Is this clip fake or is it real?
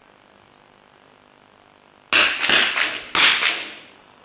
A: real